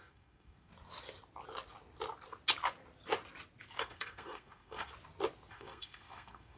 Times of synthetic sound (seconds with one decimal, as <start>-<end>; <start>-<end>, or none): 0.0-0.7; 3.8-4.9; 5.5-6.6

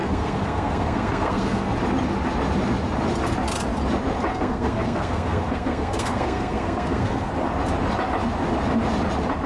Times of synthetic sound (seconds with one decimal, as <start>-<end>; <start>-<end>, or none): 0.0-1.7; 4.3-7.3

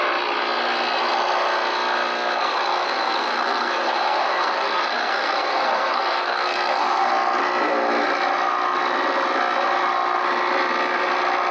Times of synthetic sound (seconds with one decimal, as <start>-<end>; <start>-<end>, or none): 2.4-7.1

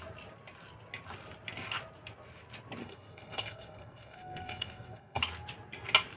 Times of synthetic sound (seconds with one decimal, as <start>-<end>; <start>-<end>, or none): 2.8-5.2

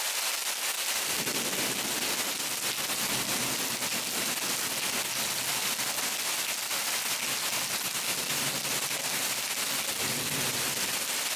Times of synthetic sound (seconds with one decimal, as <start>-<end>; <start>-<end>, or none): none

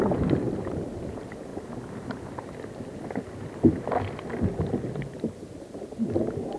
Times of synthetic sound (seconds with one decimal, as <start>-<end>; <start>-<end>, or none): none